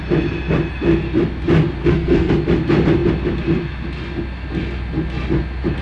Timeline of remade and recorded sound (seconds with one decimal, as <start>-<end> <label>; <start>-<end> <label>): 0.0-1.8 recorded; 1.8-2.3 remade; 2.3-5.8 recorded